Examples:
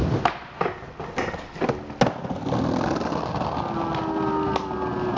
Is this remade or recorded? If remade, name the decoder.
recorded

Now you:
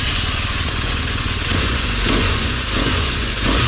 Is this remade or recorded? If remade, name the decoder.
remade, vocoder, Vocos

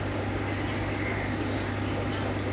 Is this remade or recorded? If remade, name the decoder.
recorded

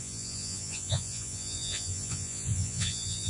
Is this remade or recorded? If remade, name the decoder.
remade, vocoder, Vocos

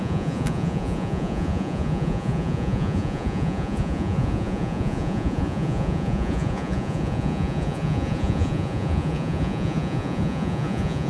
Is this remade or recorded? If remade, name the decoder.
remade, vocoder, Vocos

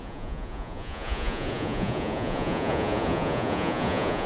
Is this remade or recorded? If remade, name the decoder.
remade, vocoder, Vocos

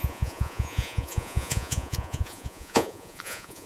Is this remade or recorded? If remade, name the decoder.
remade, vocoder, Vocos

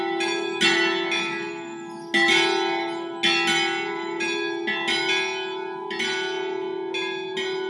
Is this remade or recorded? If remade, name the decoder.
recorded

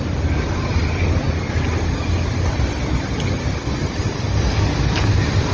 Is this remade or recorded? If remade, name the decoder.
recorded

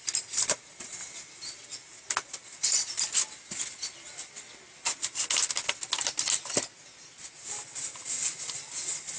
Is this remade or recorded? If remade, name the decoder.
recorded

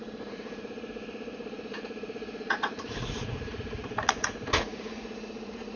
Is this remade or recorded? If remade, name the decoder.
remade, vocoder, Vocos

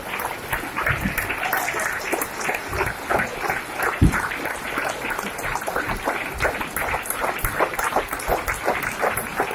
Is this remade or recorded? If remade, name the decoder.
recorded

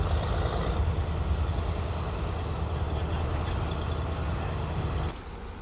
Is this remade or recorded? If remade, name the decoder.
recorded